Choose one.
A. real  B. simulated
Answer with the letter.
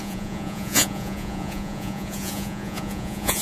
B